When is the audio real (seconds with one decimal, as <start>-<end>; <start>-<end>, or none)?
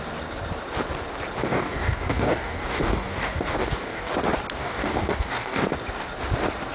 0.0-1.4; 4.1-4.6; 5.6-6.7